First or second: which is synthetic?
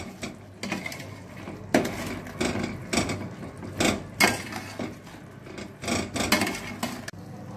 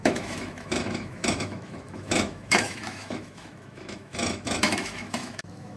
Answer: second